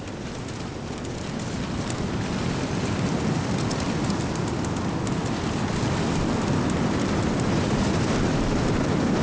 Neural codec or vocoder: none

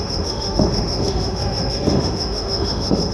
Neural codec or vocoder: autoencoder, DAC-VAE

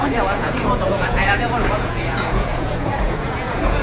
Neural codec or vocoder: vocoder, Vocos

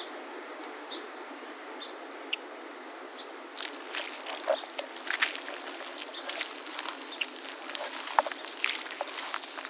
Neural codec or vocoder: none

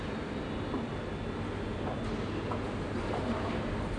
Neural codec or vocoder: none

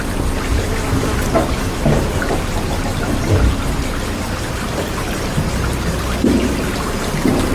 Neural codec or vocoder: none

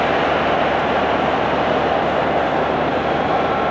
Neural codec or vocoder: none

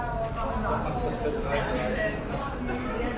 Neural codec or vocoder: none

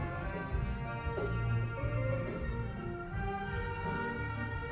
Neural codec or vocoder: none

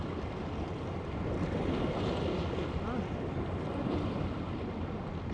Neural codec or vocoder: none